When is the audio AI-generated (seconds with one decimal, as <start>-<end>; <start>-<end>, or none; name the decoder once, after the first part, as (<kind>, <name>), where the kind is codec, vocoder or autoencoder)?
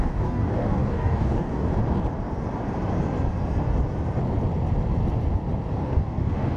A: 0.0-1.8 (codec, DAC); 5.8-6.6